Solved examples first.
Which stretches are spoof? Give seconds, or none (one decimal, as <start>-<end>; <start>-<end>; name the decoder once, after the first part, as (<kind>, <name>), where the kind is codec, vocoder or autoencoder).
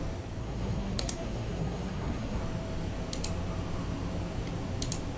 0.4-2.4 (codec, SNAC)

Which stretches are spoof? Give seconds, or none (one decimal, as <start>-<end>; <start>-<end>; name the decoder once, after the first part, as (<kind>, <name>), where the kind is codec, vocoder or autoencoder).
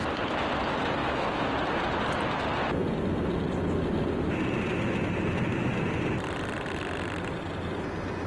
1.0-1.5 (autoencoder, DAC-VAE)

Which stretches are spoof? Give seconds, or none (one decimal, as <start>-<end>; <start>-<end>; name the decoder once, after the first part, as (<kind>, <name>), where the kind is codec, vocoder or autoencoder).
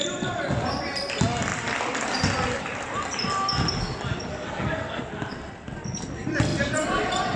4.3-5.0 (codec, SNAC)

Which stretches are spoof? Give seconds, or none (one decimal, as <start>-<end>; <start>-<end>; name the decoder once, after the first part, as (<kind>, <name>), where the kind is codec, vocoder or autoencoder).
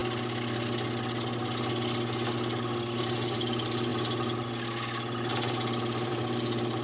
3.0-3.9 (vocoder, BigVGAN v2); 6.1-6.8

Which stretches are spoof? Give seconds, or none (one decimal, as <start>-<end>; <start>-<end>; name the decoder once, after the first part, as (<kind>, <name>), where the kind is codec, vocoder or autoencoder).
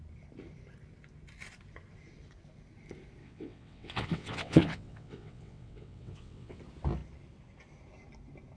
3.2-6.6 (vocoder, WaveNeXt)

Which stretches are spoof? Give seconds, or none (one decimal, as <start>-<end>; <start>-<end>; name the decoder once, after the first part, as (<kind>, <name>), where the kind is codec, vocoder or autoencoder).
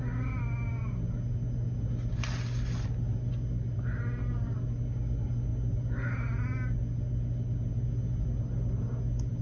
none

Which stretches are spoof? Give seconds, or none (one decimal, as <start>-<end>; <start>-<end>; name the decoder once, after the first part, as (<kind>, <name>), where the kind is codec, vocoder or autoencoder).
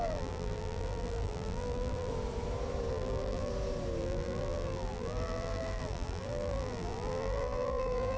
0.0-2.1 (vocoder, BigVGAN v2); 2.9-3.5; 4.0-8.2